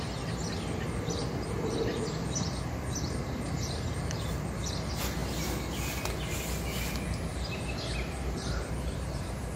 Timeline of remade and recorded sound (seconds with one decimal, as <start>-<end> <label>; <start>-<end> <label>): 0.0-1.9 recorded; 1.9-4.7 remade; 4.7-7.3 recorded; 7.3-9.6 remade